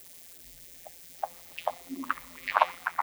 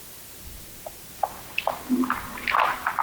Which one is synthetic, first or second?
first